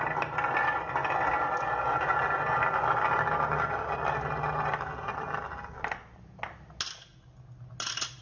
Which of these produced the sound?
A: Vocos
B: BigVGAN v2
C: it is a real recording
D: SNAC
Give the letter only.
C